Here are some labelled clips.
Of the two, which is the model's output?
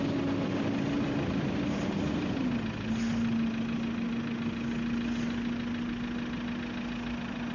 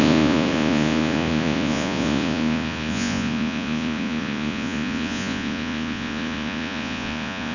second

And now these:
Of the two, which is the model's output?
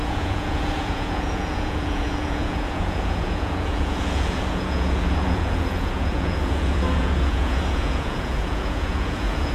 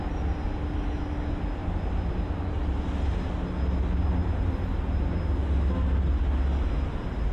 first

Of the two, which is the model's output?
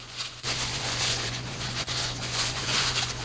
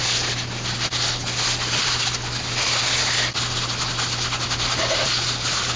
first